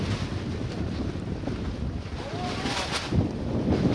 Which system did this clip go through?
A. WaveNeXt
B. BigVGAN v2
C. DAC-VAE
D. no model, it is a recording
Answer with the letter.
D